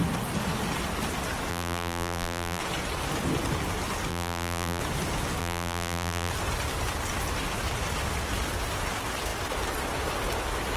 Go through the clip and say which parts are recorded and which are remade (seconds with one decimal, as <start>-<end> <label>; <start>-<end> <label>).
0.0-1.5 recorded; 1.5-2.6 remade; 2.6-4.1 recorded; 4.1-4.8 remade; 4.8-5.4 recorded; 5.4-6.3 remade; 6.3-10.8 recorded